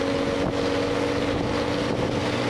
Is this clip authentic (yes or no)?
yes